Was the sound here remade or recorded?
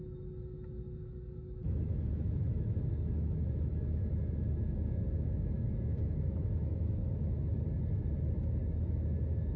remade